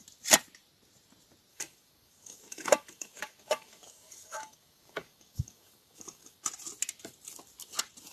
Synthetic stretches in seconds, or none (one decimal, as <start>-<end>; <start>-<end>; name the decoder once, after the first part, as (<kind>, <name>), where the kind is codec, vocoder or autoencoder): 1.5-6.4 (codec, DAC)